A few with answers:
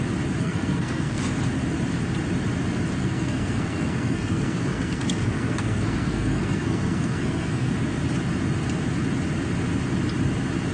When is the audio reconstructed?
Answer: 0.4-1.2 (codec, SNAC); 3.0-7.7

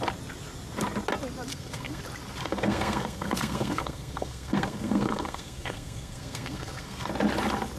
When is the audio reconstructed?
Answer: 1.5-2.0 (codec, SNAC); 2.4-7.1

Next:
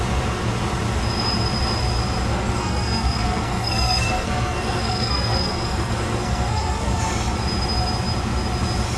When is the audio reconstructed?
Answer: 2.3-7.0 (codec, SNAC)